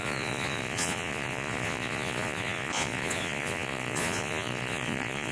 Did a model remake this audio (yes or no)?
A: yes